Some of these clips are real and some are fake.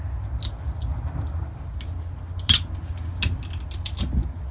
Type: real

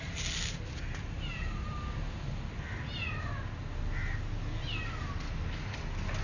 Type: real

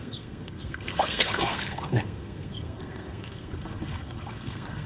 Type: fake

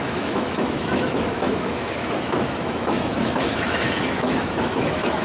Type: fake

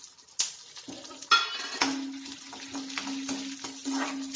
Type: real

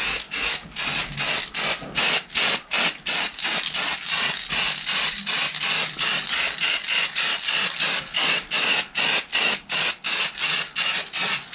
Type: real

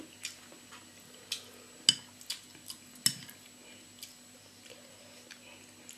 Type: real